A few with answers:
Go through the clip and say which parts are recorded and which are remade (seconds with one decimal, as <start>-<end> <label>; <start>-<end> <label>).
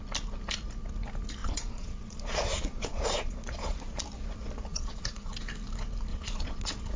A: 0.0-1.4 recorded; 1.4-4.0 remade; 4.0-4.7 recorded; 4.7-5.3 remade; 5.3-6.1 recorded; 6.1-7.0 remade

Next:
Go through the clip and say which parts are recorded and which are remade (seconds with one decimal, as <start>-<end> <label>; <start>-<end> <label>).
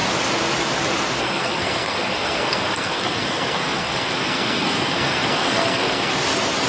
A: 0.0-1.2 recorded; 1.2-6.1 remade; 6.1-6.7 recorded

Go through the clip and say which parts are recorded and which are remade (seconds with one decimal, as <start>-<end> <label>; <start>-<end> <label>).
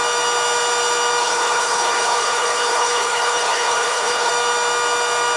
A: 0.0-1.2 recorded; 1.2-4.3 remade; 4.3-5.4 recorded